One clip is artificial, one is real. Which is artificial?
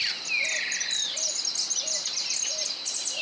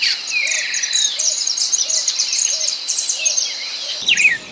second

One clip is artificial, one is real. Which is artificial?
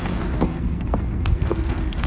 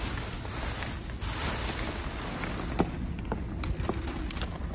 first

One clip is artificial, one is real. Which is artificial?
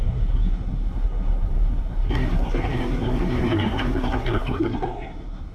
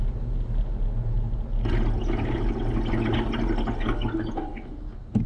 first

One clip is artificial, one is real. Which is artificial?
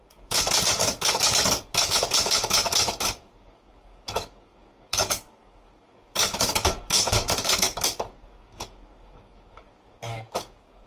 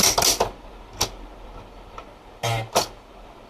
first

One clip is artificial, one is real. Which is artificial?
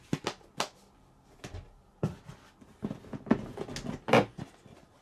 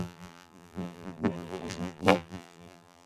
second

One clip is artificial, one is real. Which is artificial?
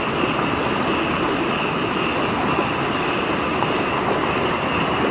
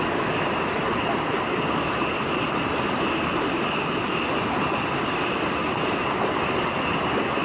second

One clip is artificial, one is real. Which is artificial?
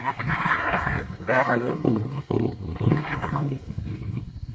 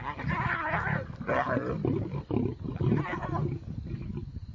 first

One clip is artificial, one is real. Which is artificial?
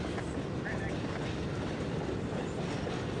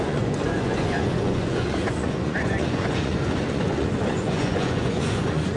second